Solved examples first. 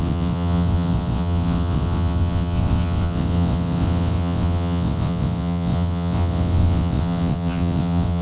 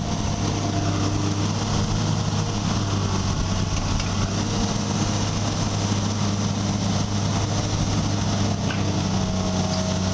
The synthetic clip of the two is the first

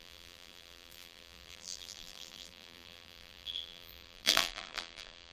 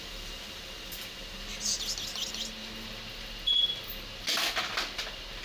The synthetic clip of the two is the first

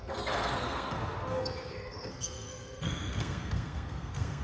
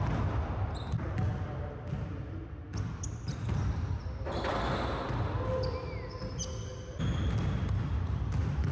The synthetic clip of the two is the first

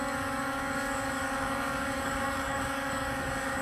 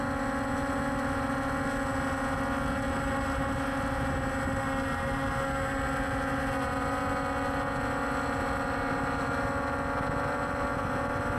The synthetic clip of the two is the first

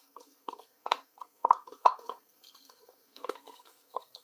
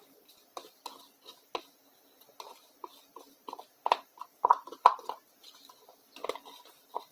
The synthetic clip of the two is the first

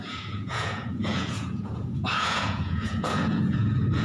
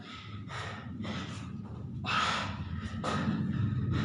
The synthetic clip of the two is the first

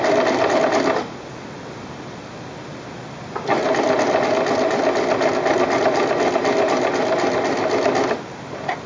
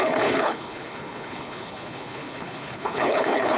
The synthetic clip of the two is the second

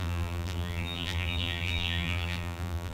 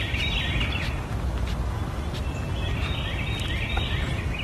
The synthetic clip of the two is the first